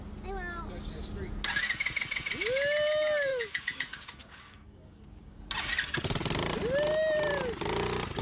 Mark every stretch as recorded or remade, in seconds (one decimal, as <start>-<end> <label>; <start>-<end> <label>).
0.0-3.3 recorded; 3.3-5.4 remade; 5.4-8.2 recorded